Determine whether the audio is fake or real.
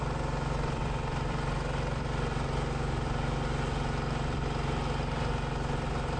real